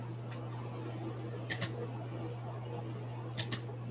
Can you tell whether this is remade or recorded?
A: recorded